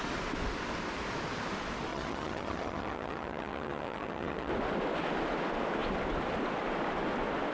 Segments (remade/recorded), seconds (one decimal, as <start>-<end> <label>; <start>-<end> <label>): 0.0-1.9 recorded; 1.9-4.5 remade; 4.5-7.5 recorded